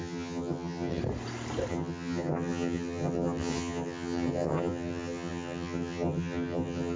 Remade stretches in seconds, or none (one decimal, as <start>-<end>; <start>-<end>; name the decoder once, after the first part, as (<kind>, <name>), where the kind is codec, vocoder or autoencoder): 0.0-1.0 (vocoder, HiFi-GAN); 1.7-7.0